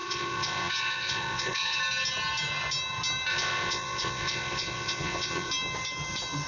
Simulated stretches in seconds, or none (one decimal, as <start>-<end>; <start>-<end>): 0.0-1.8; 3.3-5.5